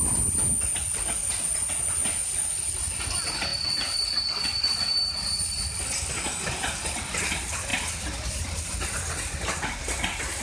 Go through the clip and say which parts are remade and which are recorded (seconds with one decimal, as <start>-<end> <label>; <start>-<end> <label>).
0.0-10.4 recorded